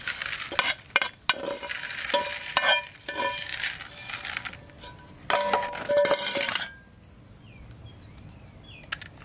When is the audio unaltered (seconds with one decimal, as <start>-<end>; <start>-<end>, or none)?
0.0-9.2